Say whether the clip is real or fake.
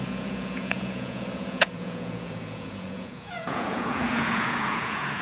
fake